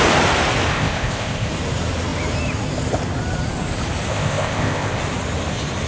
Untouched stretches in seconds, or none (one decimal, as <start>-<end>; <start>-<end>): 0.0-0.7; 1.5-4.1; 5.0-5.9